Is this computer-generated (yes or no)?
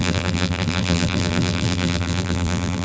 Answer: yes